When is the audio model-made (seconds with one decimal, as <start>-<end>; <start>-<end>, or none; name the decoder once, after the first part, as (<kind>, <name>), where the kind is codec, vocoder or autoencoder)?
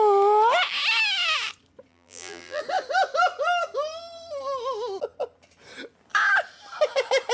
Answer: 1.9-2.6 (vocoder, BigVGAN v2)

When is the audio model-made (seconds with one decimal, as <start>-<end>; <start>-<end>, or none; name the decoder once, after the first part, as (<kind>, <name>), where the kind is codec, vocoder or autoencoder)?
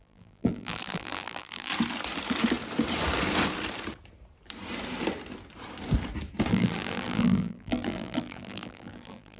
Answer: 0.0-1.7 (vocoder, BigVGAN v2); 6.5-9.4